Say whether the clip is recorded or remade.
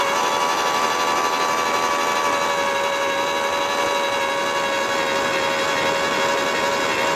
recorded